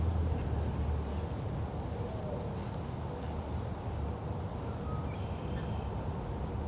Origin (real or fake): real